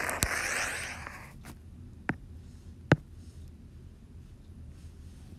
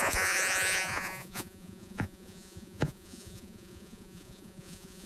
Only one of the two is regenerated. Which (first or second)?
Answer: second